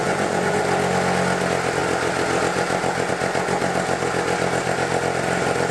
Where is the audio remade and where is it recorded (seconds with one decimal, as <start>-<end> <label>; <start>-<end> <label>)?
0.0-0.6 remade; 0.6-5.7 recorded